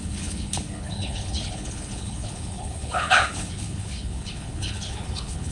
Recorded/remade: remade